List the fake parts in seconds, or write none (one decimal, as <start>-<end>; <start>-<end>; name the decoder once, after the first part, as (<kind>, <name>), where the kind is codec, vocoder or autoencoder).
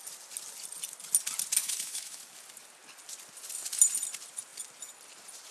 1.6-2.2 (autoencoder, DAC-VAE)